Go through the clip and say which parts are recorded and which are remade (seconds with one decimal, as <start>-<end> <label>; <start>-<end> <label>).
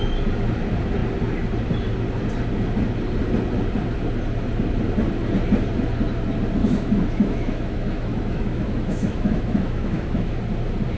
0.0-6.6 recorded; 6.6-10.4 remade; 10.4-11.0 recorded